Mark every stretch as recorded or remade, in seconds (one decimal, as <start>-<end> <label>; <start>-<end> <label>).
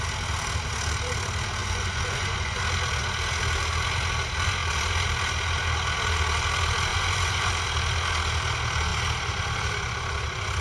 0.0-1.6 recorded; 1.6-2.6 remade; 2.6-6.9 recorded; 6.9-7.5 remade; 7.5-10.6 recorded